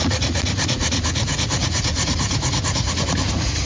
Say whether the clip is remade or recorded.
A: remade